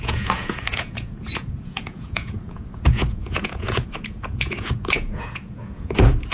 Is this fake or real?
fake